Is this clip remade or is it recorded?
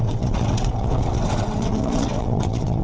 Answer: remade